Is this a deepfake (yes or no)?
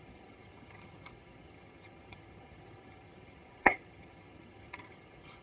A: yes